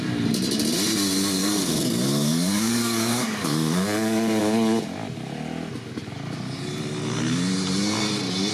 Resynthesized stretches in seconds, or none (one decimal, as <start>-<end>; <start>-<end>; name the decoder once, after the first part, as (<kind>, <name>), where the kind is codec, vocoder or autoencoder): 1.4-4.8 (codec, DAC)